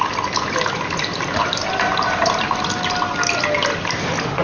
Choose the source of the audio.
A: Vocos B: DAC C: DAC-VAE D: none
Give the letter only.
D